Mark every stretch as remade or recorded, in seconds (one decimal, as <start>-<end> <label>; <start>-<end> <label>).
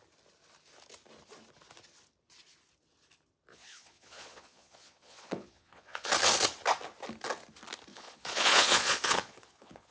0.0-3.5 recorded; 3.5-6.1 remade; 6.1-7.9 recorded; 7.9-9.9 remade